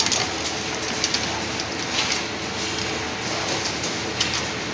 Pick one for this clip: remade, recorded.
recorded